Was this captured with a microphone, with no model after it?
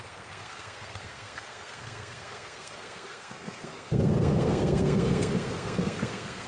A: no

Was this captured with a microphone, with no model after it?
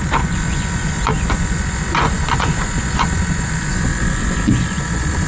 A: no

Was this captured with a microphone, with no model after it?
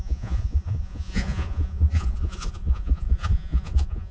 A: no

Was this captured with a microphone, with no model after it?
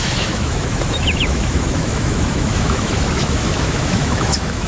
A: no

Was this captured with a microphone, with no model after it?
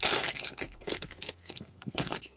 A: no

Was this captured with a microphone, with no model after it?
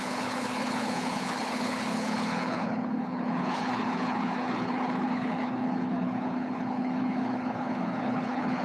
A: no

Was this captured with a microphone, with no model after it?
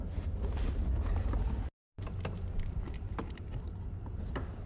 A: yes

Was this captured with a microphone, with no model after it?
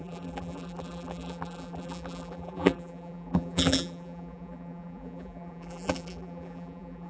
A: no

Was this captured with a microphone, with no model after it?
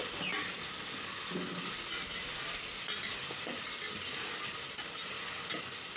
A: yes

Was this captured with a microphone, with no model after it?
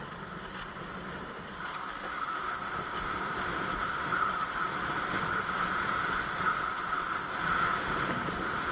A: yes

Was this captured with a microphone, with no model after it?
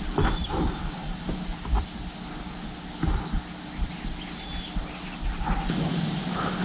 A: yes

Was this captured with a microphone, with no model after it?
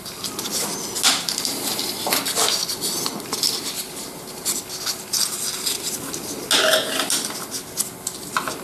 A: yes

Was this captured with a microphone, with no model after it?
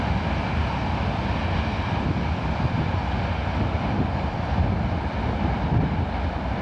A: yes